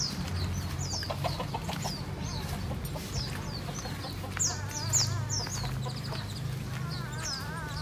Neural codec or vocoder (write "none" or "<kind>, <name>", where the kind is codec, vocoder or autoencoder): none